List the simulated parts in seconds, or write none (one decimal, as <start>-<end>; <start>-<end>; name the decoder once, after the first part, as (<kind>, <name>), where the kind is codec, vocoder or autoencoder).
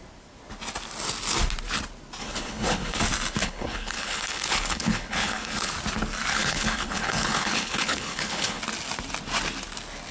2.2-3.0 (codec, HILCodec); 3.4-5.7; 6.3-8.6